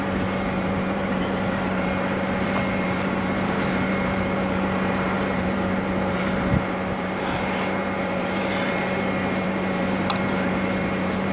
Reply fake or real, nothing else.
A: fake